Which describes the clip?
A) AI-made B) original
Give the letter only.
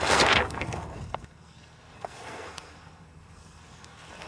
A